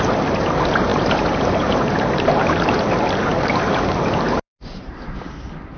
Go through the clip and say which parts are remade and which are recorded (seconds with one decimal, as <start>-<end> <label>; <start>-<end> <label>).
0.0-0.9 recorded; 0.9-2.7 remade; 2.7-3.3 recorded; 3.3-5.0 remade; 5.0-5.8 recorded